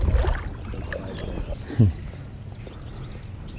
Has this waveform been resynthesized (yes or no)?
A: no